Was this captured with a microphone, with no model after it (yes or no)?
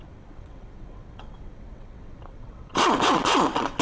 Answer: no